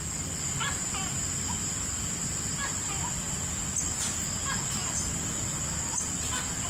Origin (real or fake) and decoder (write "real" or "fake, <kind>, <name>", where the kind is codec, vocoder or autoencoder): real